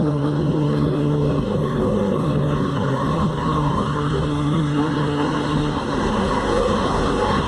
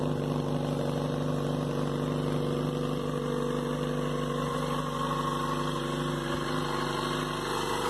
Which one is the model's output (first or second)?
first